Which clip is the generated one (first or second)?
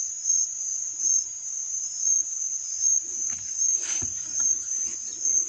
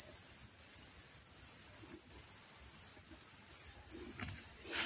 first